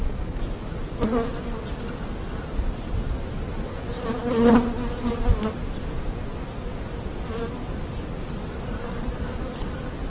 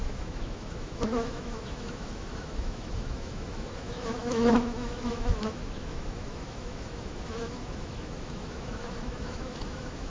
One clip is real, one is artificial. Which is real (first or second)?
first